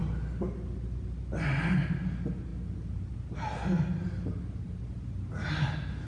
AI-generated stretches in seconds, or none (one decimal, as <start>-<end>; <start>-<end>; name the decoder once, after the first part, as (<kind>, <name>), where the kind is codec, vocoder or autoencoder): none